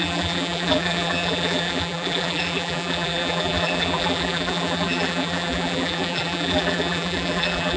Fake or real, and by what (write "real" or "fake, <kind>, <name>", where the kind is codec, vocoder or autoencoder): fake, vocoder, BigVGAN v2